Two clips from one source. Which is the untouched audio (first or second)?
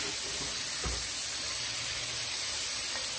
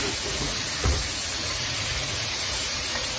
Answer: first